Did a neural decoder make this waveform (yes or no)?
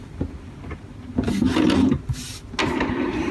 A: no